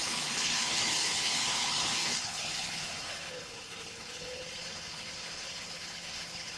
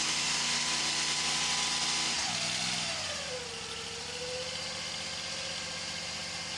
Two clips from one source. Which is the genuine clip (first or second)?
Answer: second